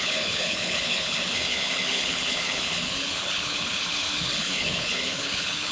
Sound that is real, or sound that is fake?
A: fake